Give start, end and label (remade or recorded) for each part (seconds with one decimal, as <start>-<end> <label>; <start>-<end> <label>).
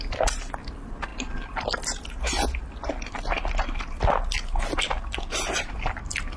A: 0.0-6.4 recorded